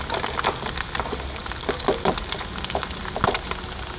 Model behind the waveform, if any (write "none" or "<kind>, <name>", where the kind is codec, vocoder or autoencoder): none